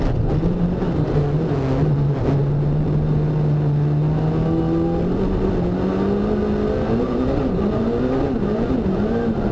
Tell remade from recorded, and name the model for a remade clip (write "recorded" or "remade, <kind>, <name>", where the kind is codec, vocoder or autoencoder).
recorded